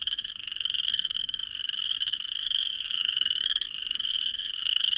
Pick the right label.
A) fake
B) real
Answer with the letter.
A